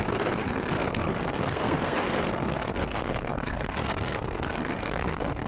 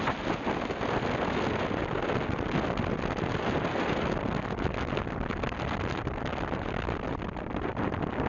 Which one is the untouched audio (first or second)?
second